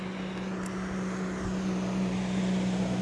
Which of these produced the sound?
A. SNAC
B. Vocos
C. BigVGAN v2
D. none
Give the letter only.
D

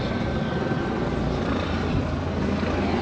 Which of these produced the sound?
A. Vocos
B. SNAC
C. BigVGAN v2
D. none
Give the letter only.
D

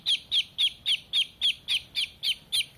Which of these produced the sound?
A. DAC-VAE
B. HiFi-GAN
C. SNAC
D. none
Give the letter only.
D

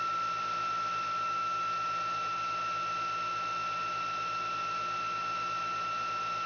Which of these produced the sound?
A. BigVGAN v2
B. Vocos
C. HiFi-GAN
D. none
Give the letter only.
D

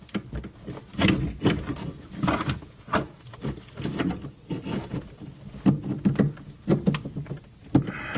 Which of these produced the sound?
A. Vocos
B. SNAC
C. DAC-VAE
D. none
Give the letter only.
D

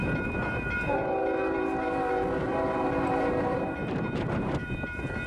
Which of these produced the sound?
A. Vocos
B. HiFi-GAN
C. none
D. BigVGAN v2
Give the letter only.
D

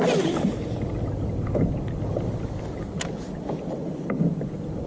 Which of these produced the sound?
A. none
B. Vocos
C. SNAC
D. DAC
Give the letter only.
A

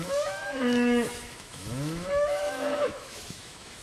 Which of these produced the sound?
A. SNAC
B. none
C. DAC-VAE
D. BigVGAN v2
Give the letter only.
C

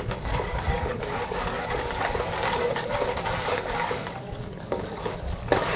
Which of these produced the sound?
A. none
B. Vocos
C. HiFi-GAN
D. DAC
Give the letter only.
D